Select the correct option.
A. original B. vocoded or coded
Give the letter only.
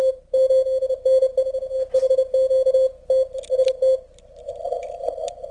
A